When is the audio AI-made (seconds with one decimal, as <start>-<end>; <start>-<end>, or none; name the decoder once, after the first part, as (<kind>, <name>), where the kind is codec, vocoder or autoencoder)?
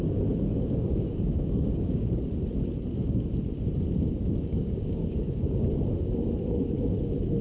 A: 0.5-2.2 (codec, DAC); 4.2-5.8